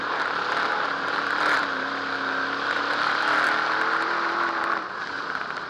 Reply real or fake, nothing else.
fake